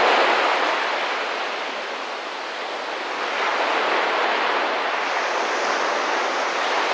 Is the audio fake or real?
real